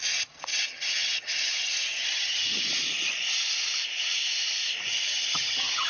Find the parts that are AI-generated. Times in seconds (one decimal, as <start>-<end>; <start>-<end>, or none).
0.5-2.7; 5.1-5.9